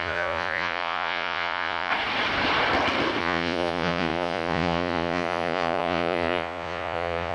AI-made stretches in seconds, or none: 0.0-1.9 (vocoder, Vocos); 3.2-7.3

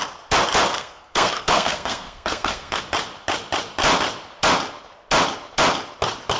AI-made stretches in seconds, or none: 0.7-2.8 (codec, SNAC)